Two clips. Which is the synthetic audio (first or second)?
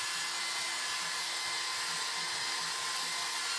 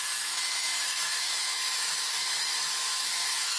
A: second